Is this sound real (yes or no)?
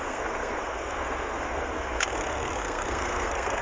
no